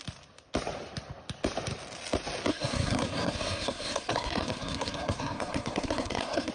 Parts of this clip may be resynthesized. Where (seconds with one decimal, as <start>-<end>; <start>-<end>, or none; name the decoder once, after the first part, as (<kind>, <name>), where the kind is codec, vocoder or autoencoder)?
2.5-6.5 (codec, SNAC)